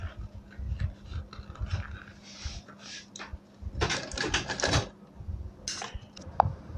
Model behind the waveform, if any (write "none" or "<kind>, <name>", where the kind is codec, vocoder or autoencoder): none